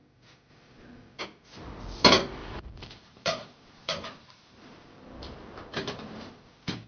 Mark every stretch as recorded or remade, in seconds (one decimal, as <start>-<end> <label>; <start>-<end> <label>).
0.0-0.5 recorded; 0.5-1.2 remade; 1.2-2.4 recorded; 2.4-6.5 remade; 6.5-6.9 recorded